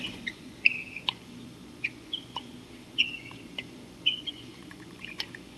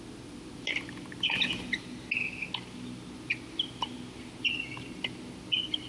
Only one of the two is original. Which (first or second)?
second